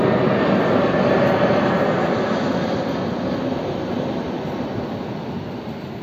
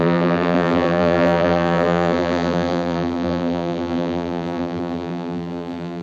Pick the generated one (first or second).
second